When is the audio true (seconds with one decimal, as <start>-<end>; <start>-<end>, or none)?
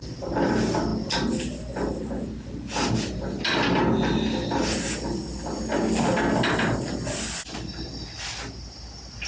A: 0.0-9.3